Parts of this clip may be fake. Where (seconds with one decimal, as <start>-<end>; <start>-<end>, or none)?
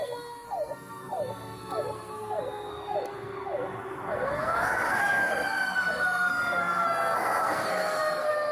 0.0-8.5